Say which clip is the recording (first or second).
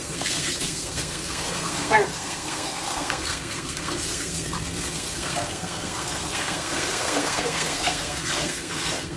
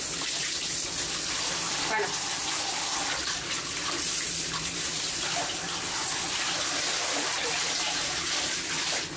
second